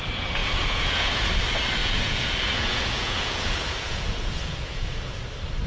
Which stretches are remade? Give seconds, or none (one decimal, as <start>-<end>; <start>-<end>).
0.4-1.3; 1.8-5.2

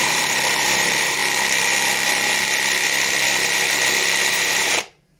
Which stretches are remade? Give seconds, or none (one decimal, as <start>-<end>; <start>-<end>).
0.0-1.2; 4.3-5.2

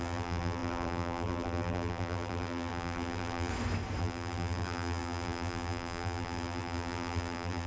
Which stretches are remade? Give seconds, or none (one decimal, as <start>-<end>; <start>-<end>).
0.0-3.5; 4.0-7.7

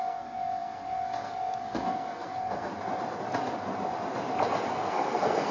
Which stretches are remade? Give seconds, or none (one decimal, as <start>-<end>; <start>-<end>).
0.0-2.7; 4.8-5.5